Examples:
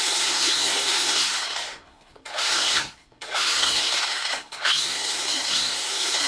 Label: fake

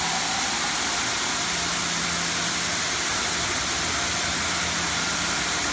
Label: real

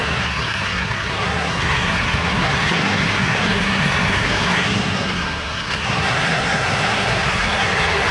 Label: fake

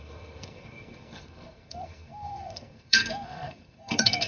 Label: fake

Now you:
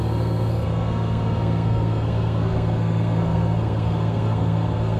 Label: fake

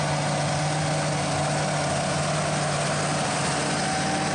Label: real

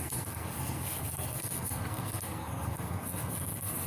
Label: fake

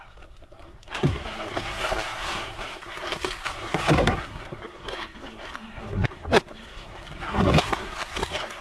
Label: fake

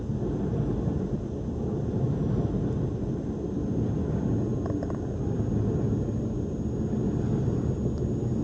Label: real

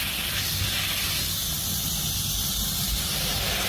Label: real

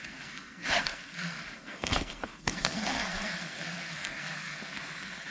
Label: fake